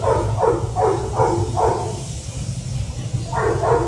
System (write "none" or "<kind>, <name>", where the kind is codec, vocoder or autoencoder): none